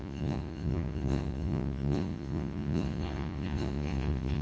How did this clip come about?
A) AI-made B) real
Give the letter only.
A